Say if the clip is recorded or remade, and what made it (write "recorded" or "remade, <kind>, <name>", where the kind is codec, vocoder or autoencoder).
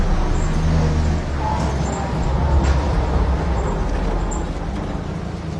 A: recorded